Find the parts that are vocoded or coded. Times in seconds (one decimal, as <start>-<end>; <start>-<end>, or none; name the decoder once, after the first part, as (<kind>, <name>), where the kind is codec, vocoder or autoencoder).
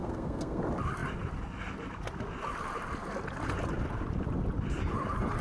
0.0-0.6 (codec, SNAC)